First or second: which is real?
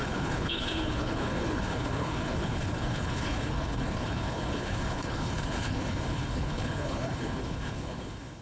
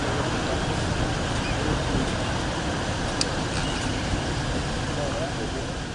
second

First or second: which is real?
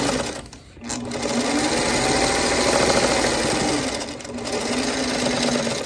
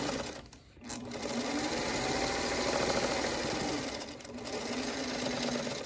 first